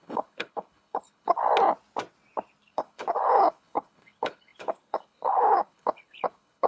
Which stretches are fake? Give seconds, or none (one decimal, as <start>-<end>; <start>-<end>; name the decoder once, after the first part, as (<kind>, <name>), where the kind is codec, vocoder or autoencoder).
0.0-1.4 (codec, HILCodec); 2.6-6.7